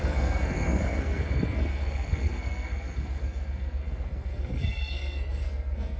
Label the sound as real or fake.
fake